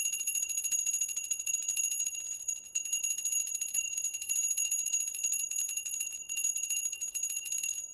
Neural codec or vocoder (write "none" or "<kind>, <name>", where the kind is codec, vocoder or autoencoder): vocoder, Vocos